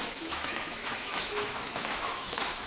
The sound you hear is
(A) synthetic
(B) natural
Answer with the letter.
A